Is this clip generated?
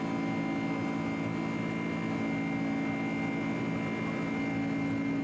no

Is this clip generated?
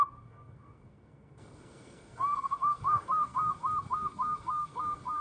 yes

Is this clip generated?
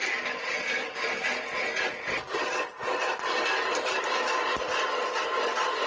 no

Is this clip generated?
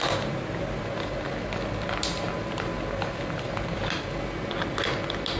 no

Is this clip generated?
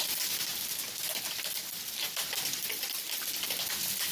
yes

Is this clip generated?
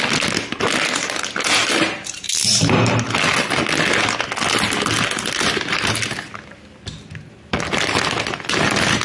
no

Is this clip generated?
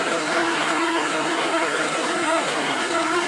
yes